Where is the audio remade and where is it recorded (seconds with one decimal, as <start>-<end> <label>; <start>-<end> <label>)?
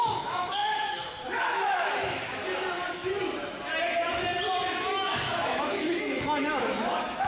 0.0-2.4 remade; 2.4-4.7 recorded; 4.7-7.3 remade